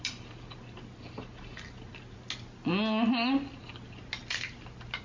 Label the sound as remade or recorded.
recorded